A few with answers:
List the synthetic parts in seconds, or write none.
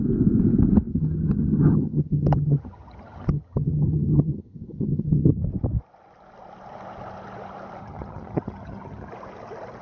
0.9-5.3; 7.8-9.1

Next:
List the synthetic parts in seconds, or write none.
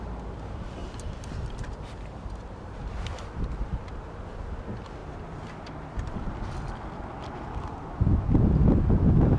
0.8-4.1; 5.0-6.3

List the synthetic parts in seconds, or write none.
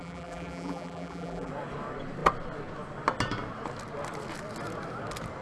0.0-1.5